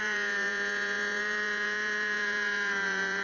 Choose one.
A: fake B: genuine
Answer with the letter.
A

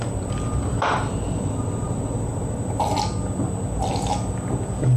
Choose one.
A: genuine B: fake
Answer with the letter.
A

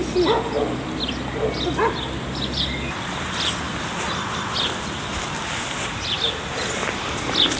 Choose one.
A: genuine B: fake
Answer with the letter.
A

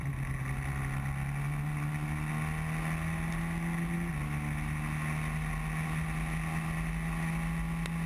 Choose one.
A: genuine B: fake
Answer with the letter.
A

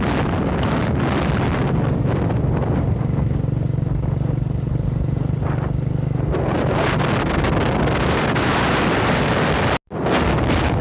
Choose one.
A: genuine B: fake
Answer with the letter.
A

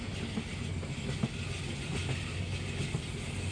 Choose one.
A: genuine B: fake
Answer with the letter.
A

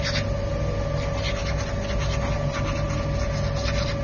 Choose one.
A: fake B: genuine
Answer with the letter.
B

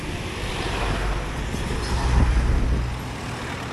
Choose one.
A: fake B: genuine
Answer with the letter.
B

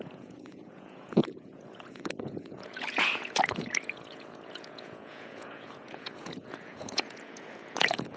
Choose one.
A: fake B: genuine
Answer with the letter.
A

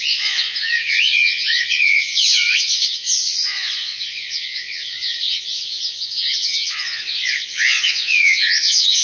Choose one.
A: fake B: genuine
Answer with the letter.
A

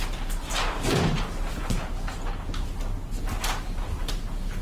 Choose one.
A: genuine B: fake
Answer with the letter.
A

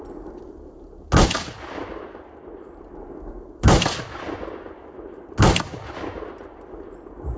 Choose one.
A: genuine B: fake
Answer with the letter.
A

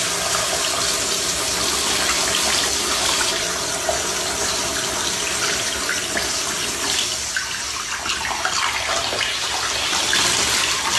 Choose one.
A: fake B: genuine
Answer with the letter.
B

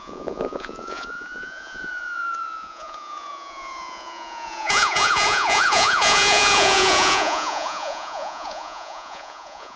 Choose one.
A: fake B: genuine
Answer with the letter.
A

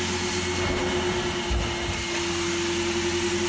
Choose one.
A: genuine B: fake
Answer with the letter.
A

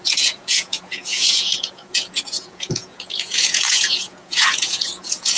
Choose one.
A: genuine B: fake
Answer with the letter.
B